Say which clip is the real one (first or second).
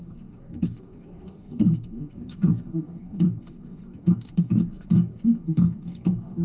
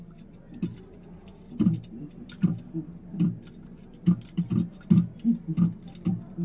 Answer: second